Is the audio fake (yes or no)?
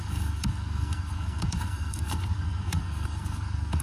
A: yes